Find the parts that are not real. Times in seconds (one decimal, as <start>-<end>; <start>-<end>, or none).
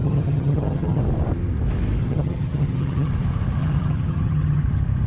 0.0-1.0; 2.0-3.1; 3.6-4.6